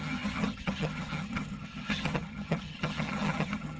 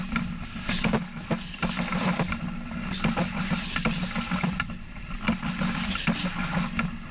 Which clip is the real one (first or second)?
second